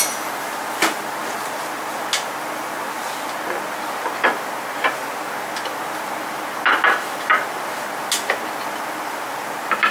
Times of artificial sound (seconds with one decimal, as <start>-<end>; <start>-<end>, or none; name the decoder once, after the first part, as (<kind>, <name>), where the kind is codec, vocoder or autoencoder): none